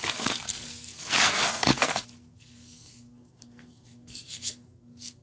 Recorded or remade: remade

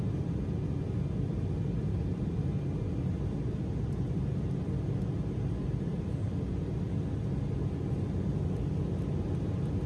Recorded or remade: recorded